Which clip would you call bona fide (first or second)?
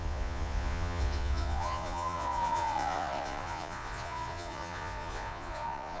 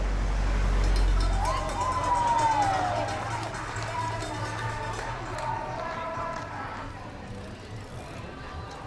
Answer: second